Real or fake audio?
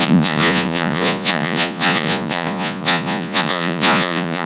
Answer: fake